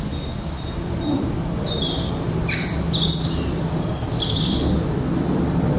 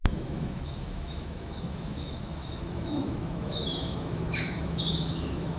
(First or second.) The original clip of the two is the first